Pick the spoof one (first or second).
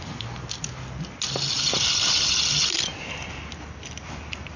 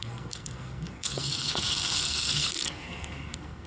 second